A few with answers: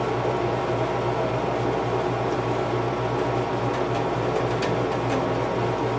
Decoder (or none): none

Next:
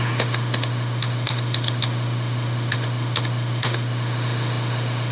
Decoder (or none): autoencoder, DAC-VAE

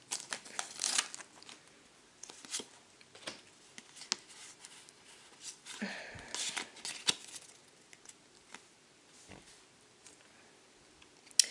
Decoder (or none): none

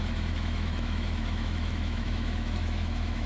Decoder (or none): autoencoder, DAC-VAE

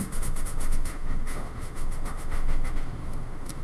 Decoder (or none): autoencoder, DAC-VAE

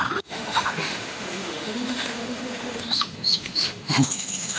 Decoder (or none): autoencoder, DAC-VAE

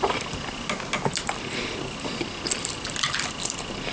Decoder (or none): none